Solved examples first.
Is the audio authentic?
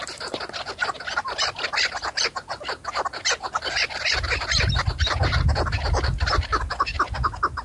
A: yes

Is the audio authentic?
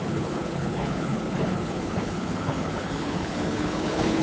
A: no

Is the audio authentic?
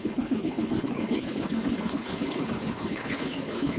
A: no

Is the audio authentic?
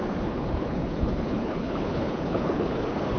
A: no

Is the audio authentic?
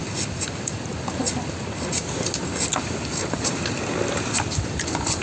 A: yes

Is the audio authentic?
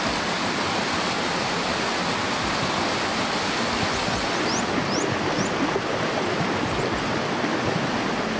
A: yes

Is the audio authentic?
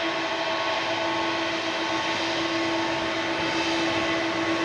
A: yes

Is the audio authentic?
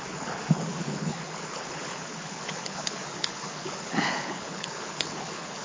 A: no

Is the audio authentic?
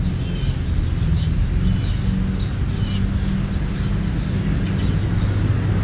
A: yes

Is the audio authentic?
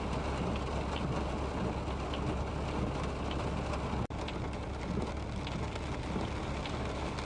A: yes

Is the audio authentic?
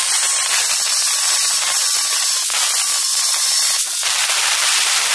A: yes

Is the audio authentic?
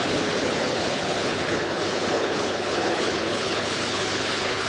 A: no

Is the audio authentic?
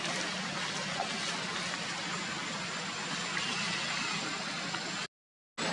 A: yes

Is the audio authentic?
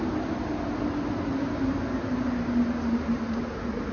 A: yes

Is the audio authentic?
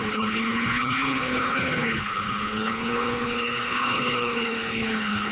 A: no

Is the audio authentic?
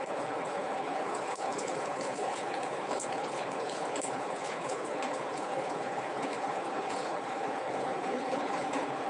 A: no